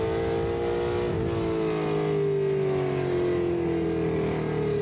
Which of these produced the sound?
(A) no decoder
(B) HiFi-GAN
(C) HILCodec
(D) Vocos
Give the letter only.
A